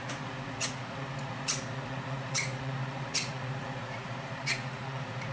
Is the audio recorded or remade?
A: remade